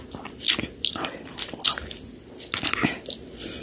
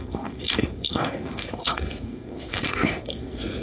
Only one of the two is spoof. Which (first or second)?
second